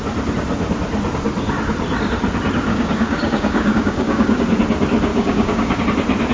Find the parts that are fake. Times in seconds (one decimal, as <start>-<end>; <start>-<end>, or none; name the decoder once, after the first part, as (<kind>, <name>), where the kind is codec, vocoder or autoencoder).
2.7-4.4 (codec, DAC); 5.1-5.8